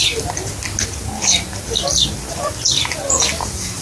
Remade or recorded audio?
recorded